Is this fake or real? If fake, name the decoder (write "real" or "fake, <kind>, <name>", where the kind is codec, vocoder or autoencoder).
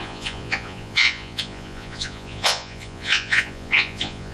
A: fake, vocoder, Vocos